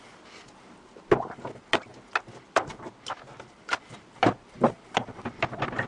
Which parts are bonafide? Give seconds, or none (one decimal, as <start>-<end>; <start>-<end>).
0.0-5.9